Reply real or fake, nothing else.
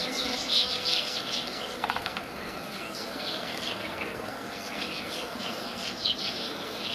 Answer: fake